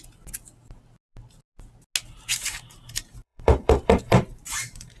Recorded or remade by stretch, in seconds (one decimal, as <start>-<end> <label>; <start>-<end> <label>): 0.0-2.3 recorded; 2.3-5.0 remade